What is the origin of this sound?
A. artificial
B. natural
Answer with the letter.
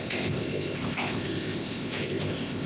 A